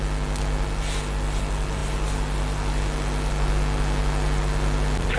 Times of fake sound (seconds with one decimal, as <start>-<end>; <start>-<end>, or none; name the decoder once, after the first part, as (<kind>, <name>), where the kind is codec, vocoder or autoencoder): none